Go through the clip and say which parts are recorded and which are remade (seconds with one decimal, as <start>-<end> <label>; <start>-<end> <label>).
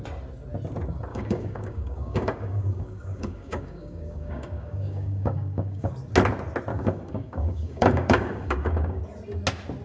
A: 0.0-1.1 recorded; 1.1-5.9 remade; 5.9-6.7 recorded; 6.7-9.0 remade; 9.0-9.8 recorded